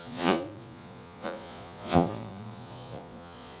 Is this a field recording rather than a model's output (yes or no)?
no